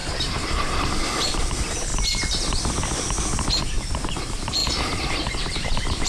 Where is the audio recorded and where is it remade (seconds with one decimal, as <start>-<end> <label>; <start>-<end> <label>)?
0.0-1.9 remade; 1.9-3.6 recorded; 3.6-4.6 remade; 4.6-5.5 recorded; 5.5-6.1 remade